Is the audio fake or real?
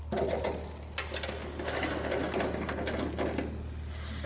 real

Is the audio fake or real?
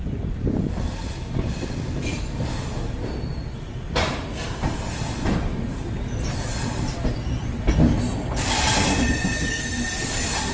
real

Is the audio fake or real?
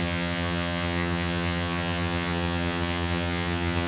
fake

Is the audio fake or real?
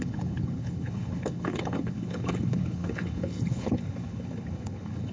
fake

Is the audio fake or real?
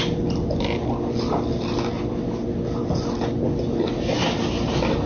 real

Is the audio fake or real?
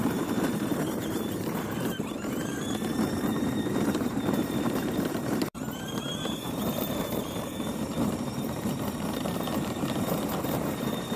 fake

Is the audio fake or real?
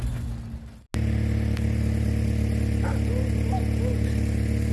real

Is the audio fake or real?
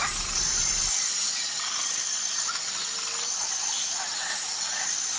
real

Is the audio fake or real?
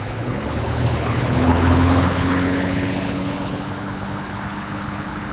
fake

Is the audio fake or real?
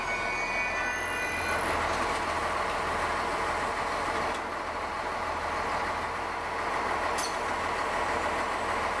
real